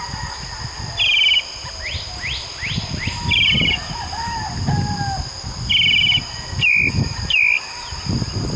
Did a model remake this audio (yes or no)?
no